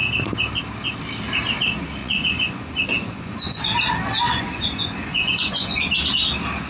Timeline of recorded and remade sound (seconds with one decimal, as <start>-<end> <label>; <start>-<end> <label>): 0.0-2.0 recorded; 2.0-3.6 remade; 3.6-4.3 recorded; 4.3-5.9 remade; 5.9-6.7 recorded